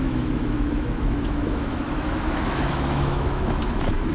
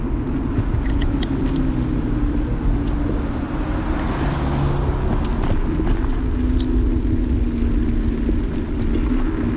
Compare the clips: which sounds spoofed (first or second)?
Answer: first